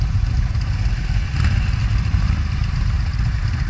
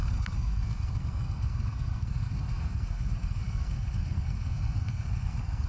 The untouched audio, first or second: first